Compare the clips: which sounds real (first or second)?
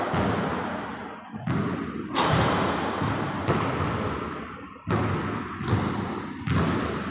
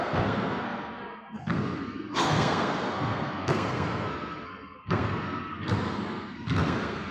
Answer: first